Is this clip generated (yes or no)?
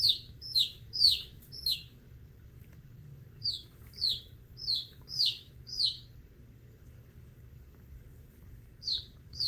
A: yes